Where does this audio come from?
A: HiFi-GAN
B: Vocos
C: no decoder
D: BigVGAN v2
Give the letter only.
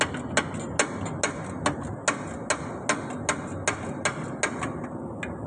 C